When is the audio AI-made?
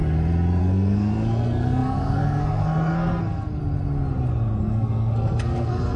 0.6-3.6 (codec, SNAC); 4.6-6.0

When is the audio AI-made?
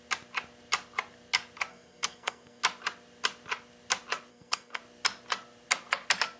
1.7-2.6 (codec, SNAC); 4.3-4.8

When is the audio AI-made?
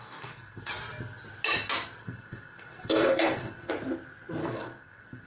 0.0-0.7 (codec, SNAC); 2.0-3.7; 4.4-5.3